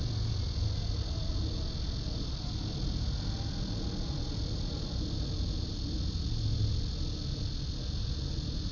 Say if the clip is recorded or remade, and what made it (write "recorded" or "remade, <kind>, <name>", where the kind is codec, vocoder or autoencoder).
recorded